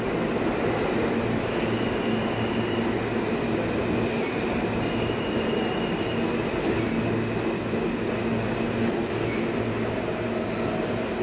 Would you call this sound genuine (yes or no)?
yes